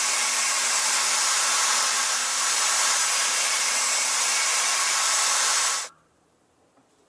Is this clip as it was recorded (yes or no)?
no